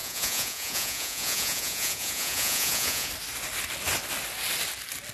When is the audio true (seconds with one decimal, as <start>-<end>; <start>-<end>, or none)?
3.1-5.1